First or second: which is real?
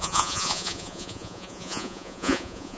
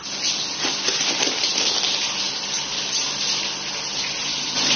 second